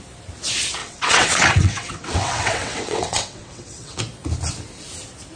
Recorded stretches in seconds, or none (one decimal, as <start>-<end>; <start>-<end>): 0.0-0.8; 4.0-5.4